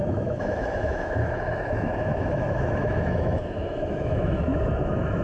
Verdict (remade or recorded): remade